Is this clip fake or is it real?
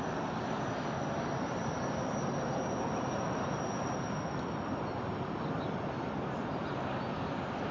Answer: real